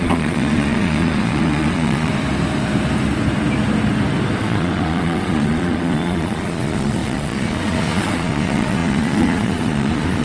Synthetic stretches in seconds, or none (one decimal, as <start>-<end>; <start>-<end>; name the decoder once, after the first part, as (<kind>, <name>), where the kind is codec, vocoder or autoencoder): 0.0-2.1 (vocoder, Vocos); 4.4-10.2